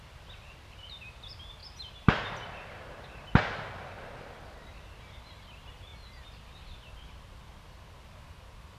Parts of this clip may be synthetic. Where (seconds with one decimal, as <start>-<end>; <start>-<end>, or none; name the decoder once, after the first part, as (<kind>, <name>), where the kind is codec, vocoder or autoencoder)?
1.6-4.4 (vocoder, BigVGAN v2)